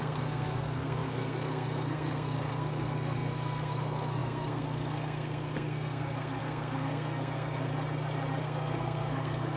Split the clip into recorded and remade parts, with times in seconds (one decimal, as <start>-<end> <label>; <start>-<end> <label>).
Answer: 0.0-7.7 remade; 7.7-8.4 recorded; 8.4-9.6 remade